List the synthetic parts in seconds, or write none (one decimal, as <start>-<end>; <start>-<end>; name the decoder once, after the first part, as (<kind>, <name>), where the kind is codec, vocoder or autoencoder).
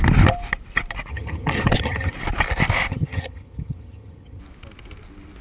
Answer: 1.1-2.1 (vocoder, HiFi-GAN); 2.9-4.4